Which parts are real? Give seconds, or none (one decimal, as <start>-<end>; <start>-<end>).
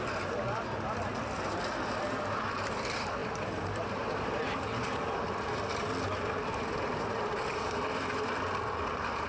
none